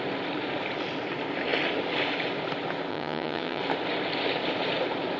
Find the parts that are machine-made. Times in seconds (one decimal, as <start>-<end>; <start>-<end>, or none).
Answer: 2.9-3.6